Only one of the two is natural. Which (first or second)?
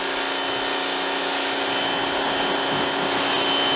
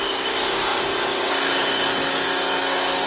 first